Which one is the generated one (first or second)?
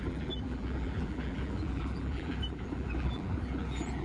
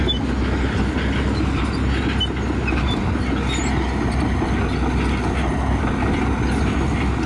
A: first